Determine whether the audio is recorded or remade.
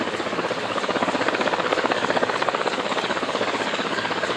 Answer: remade